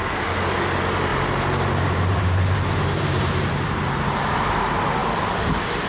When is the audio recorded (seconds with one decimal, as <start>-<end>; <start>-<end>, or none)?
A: 0.0-1.1; 4.6-5.9

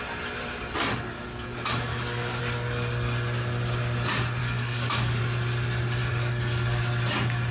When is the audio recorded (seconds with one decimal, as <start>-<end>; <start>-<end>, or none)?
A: 0.0-1.9; 2.4-4.4; 5.2-6.0; 6.8-7.5